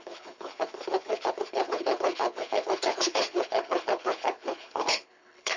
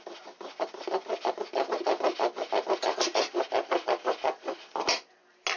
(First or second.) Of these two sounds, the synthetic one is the first